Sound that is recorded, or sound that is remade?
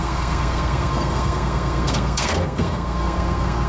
remade